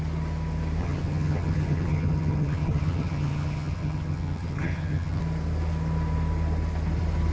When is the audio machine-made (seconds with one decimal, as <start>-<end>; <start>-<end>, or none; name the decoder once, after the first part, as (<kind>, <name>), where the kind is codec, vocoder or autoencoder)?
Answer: 0.8-5.2 (vocoder, HiFi-GAN)

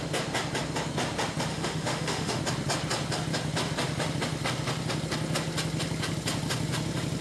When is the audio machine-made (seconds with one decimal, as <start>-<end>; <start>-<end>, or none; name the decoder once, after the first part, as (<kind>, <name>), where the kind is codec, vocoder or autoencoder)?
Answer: 1.5-2.4 (autoencoder, DAC-VAE)

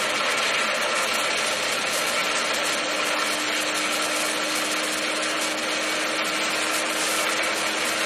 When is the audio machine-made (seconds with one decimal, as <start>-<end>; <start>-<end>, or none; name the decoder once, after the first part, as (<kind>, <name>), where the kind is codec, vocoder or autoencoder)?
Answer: none

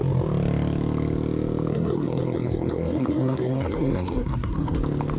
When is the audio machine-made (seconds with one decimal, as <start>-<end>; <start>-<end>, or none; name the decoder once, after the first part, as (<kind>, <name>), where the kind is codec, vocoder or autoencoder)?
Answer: 1.7-4.8 (codec, SNAC)

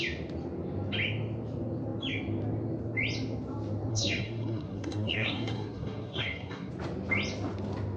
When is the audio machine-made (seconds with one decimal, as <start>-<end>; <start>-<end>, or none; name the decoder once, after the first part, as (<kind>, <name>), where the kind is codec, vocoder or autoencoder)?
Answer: 3.9-6.7 (codec, SNAC)